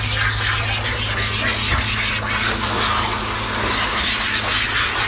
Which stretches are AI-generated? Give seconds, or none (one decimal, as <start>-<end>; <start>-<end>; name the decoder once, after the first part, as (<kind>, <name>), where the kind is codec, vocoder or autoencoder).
none